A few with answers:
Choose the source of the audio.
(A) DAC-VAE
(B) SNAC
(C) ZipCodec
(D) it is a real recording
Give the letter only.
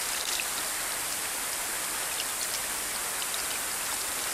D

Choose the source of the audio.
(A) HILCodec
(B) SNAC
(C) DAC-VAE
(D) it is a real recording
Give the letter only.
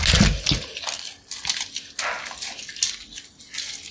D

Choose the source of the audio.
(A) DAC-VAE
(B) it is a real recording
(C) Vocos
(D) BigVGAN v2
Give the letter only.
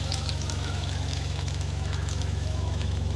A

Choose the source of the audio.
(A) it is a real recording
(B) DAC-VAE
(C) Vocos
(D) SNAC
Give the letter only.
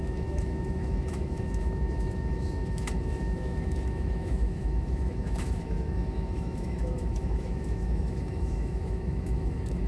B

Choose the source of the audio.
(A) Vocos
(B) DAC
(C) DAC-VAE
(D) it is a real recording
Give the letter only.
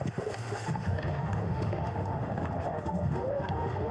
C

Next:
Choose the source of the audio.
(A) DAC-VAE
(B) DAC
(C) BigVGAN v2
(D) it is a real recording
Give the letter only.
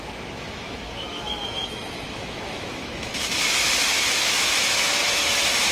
A